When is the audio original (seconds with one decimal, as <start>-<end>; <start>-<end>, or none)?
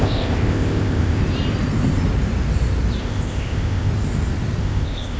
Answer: 1.2-3.0; 3.9-4.6